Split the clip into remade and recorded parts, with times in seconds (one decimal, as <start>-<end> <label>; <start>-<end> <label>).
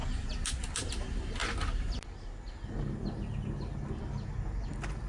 0.0-5.1 recorded